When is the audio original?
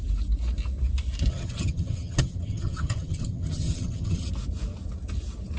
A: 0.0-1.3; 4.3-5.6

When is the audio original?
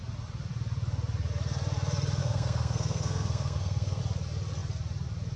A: 0.0-2.2; 4.0-5.4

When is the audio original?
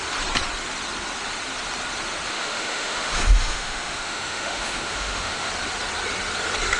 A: 0.0-2.3; 5.5-6.8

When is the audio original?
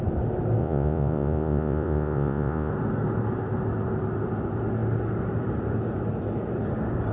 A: 0.0-0.6; 2.7-7.1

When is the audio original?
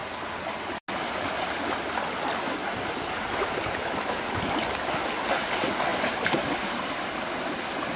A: 0.0-2.6; 4.2-5.9; 6.8-8.0